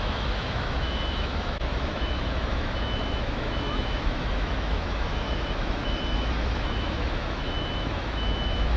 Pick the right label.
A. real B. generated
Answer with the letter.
B